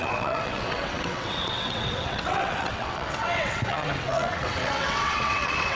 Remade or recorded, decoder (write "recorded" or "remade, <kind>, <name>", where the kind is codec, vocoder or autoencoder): remade, vocoder, WaveNeXt